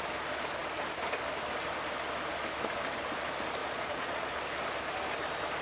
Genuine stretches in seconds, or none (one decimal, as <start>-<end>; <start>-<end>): 0.0-3.6; 4.3-5.6